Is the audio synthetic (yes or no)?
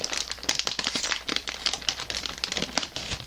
yes